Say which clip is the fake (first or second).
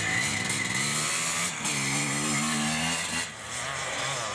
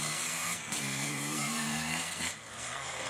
second